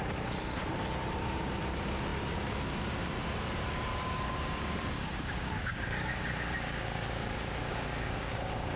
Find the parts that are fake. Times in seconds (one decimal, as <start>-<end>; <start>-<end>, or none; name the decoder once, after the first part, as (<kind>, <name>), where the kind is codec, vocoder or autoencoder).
3.9-8.8 (codec, DAC)